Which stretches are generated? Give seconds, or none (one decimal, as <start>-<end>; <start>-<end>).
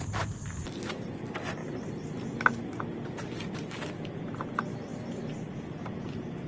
none